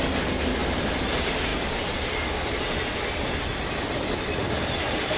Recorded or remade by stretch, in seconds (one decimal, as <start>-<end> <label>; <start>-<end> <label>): 0.0-5.2 recorded